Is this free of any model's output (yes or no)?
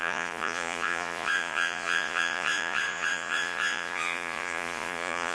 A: no